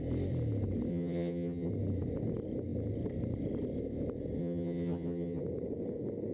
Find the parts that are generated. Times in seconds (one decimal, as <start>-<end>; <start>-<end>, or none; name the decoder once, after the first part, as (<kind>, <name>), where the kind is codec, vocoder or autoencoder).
0.9-1.7 (vocoder, HiFi-GAN); 4.4-5.4